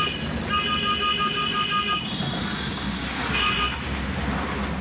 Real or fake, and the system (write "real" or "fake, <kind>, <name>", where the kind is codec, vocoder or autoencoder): real